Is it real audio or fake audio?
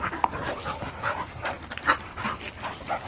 real